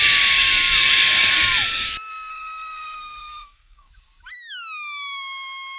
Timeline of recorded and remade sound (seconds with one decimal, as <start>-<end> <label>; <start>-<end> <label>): 0.0-2.3 recorded; 2.3-3.9 remade; 3.9-5.8 recorded